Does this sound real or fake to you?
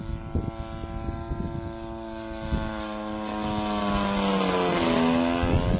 real